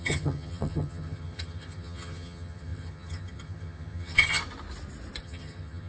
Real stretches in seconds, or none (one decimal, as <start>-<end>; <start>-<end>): 4.4-5.2